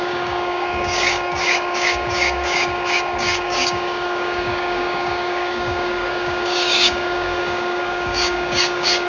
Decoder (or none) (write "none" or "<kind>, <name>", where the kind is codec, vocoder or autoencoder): codec, DAC